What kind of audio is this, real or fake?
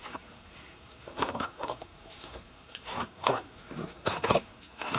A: fake